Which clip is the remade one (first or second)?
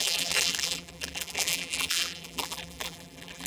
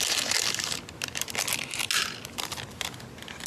first